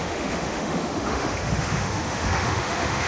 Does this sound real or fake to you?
fake